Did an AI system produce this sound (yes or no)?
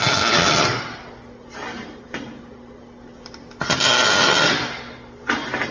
no